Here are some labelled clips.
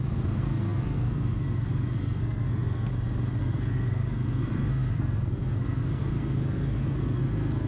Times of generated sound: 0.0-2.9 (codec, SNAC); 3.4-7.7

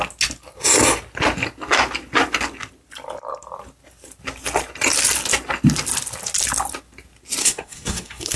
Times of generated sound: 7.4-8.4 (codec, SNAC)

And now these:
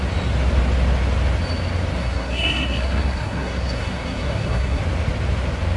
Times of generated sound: 2.0-4.8 (codec, SNAC)